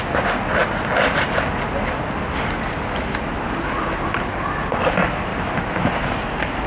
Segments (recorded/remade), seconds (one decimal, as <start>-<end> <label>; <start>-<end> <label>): 0.0-6.7 recorded